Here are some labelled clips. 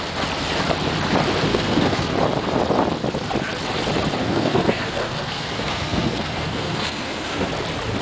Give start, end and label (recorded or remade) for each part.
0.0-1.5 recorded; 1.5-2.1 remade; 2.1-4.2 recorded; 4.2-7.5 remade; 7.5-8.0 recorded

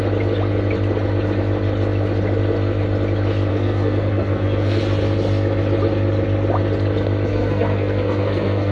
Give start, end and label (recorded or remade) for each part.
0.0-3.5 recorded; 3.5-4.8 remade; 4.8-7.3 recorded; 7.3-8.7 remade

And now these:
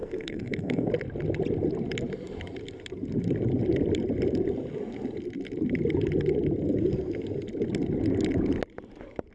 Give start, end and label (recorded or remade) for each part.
0.0-0.9 remade; 0.9-9.3 recorded

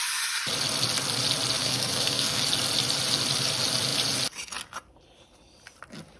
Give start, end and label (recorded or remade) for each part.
0.0-1.6 recorded; 1.6-2.4 remade; 2.4-6.2 recorded